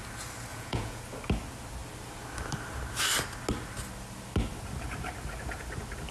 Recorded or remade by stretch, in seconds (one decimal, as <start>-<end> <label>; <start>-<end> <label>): 0.0-0.5 recorded; 0.5-1.0 remade; 1.0-6.1 recorded